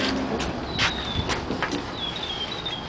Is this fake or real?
real